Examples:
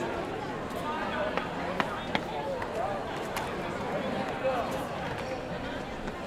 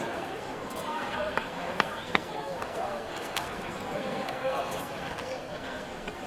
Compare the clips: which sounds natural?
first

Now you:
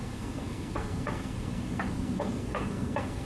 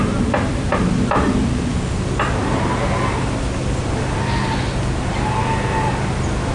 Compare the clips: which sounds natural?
second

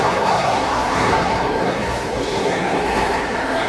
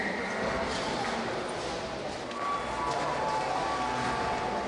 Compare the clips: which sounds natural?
second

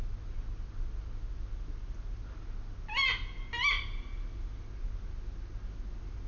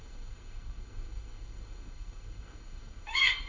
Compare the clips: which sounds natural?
first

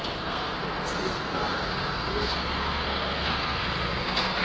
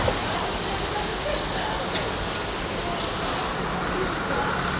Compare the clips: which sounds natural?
second